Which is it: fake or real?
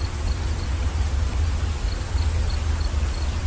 real